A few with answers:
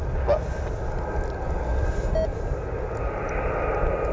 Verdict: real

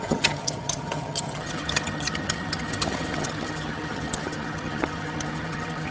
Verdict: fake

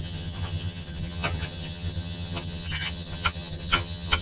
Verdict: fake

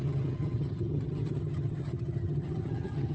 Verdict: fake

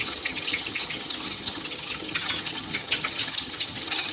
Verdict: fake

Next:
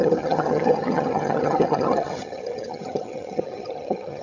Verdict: fake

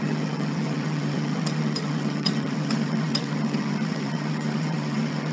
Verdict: fake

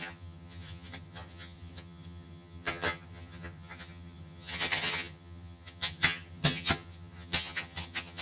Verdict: fake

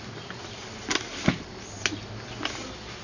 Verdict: real